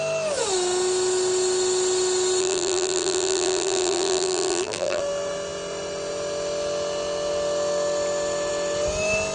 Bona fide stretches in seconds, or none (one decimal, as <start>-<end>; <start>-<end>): 0.0-2.4; 5.0-9.3